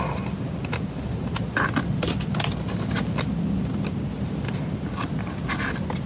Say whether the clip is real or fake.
real